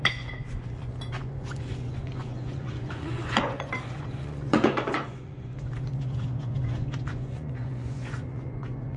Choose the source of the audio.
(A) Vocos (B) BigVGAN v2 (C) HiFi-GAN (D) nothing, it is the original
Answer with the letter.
A